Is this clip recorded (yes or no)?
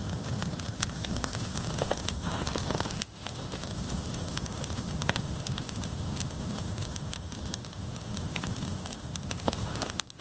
no